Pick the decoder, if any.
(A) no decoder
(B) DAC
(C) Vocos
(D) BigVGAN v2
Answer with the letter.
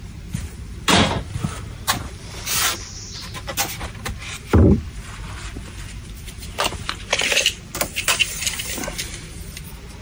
D